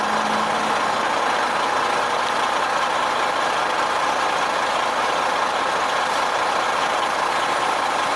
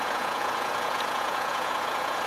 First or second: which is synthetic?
second